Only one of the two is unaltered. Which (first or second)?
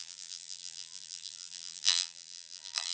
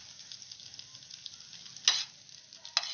second